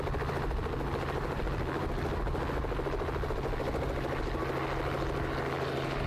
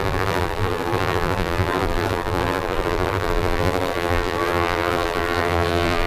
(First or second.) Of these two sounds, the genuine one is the first